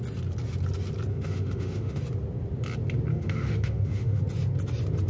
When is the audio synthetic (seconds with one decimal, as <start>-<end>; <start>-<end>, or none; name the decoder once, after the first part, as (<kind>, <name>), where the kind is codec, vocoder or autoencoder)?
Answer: 1.1-2.0 (autoencoder, DAC-VAE); 3.1-4.2